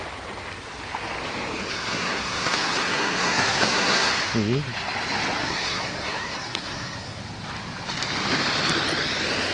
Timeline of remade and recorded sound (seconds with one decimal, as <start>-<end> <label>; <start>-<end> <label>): 0.0-1.7 recorded; 1.7-4.1 remade; 4.1-5.4 recorded; 5.4-7.2 remade; 7.2-9.5 recorded